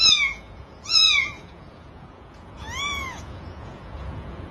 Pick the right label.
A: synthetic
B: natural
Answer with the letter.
A